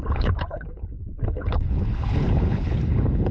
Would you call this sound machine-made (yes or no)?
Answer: yes